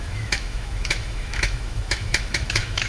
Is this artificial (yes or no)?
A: yes